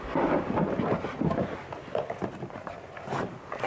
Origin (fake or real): real